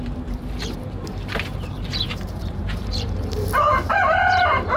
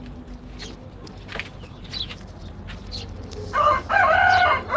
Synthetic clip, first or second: first